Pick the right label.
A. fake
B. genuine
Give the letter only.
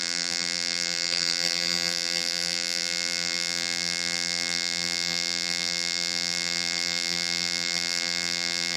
A